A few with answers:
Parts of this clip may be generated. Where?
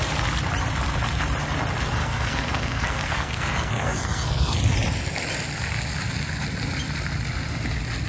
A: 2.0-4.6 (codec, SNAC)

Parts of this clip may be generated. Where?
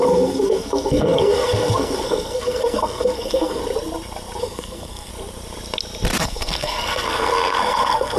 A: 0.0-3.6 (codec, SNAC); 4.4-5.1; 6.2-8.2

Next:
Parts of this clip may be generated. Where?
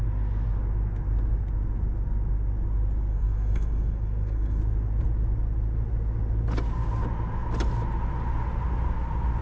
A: 3.1-4.6 (codec, SNAC)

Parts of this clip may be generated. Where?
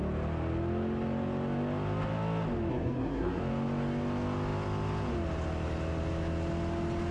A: 2.7-3.4 (codec, SNAC)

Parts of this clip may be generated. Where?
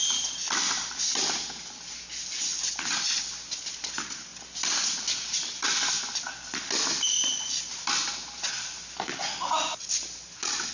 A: none